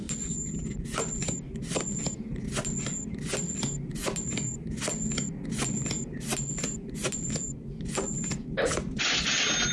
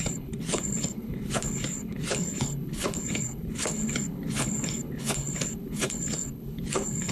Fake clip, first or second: second